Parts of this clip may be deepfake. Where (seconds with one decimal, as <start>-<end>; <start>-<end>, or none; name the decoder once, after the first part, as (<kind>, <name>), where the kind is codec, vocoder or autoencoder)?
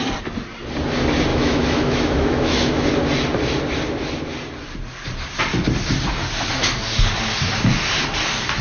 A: 1.3-2.9 (autoencoder, DAC-VAE)